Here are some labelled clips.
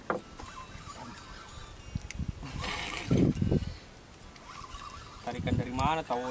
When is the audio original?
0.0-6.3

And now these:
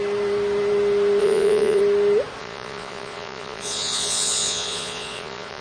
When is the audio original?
0.0-1.2; 1.8-2.4

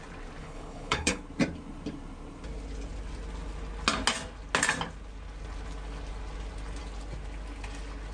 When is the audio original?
0.0-0.4; 1.2-8.1

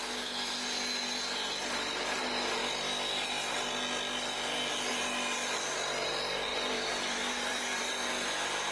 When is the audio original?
0.0-6.5; 7.9-8.7

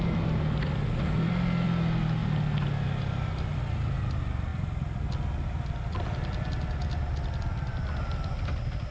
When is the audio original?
0.0-8.9

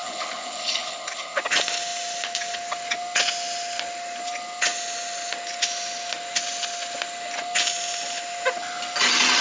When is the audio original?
1.4-9.4

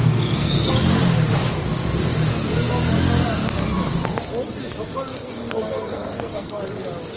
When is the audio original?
0.7-4.9; 6.6-7.2